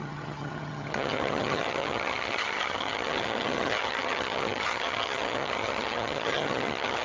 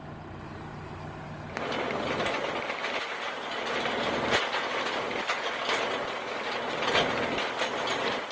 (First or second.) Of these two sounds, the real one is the second